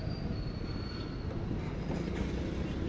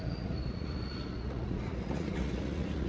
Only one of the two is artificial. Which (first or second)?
second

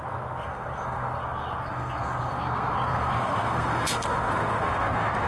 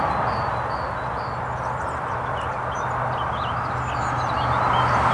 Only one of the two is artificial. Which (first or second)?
first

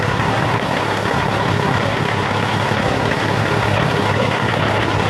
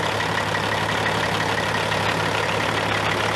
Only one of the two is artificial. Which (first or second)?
first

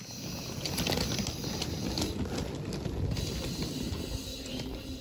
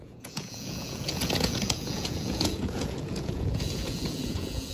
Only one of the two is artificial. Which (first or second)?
second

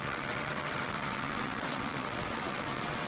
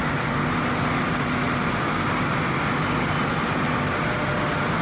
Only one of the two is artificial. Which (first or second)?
first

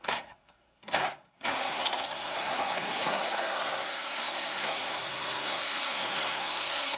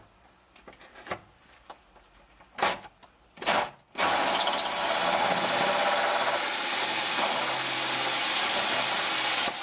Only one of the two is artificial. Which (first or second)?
first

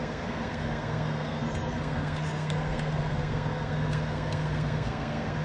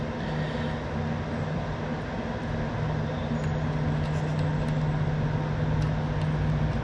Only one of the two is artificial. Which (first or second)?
first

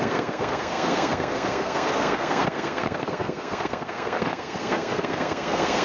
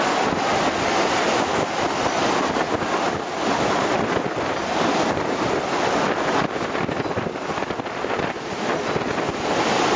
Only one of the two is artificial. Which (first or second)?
first